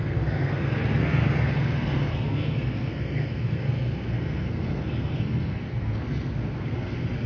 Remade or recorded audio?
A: remade